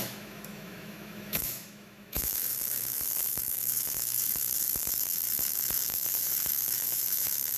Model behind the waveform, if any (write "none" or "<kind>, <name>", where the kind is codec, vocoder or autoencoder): autoencoder, DAC-VAE